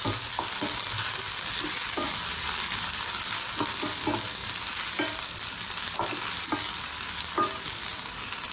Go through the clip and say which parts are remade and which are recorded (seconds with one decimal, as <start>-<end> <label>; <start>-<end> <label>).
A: 0.0-8.5 recorded